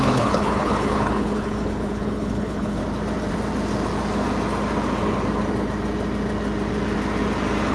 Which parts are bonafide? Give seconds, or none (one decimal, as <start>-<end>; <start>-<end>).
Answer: 2.8-7.7